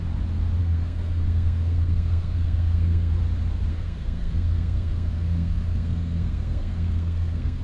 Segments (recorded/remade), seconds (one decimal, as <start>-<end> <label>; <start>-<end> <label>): 0.0-0.6 recorded; 0.6-3.1 remade; 3.1-3.7 recorded; 3.7-7.6 remade